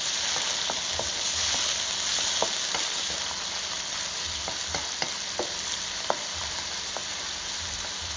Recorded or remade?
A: recorded